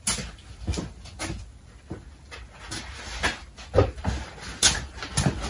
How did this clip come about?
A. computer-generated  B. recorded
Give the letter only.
B